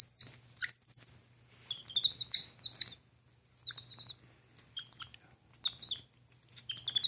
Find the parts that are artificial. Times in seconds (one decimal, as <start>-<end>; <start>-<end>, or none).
none